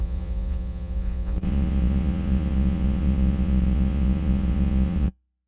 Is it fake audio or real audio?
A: fake